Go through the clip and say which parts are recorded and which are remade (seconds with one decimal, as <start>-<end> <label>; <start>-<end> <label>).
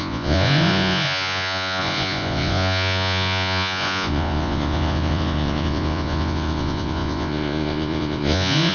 0.0-8.7 remade